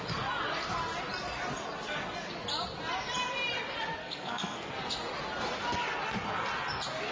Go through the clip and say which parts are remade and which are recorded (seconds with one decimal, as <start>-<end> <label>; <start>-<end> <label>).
0.0-4.0 recorded; 4.0-4.7 remade; 4.7-7.1 recorded